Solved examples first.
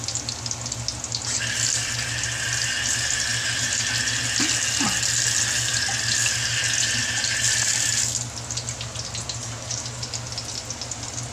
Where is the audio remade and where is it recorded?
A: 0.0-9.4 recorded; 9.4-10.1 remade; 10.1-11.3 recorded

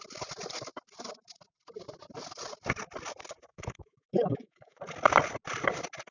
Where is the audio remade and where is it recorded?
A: 0.0-3.5 recorded; 3.5-4.8 remade; 4.8-6.1 recorded

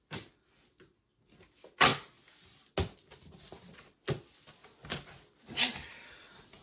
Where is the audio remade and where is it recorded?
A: 0.0-6.6 recorded

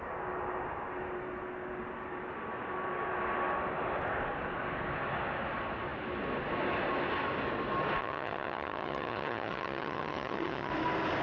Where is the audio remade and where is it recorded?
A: 0.0-8.0 recorded; 8.0-10.7 remade; 10.7-11.2 recorded

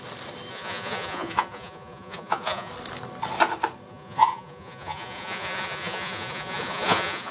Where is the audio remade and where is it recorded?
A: 0.0-0.5 recorded; 0.5-2.7 remade; 2.7-3.9 recorded; 3.9-7.3 remade

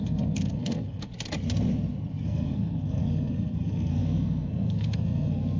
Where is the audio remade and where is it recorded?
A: 0.0-1.1 remade; 1.1-2.2 recorded; 2.2-5.6 remade

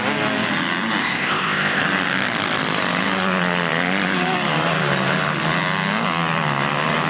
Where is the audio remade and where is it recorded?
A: 0.0-1.0 recorded; 1.0-1.8 remade; 1.8-7.1 recorded

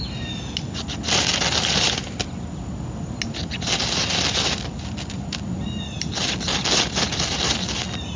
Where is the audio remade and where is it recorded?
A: 0.0-8.2 recorded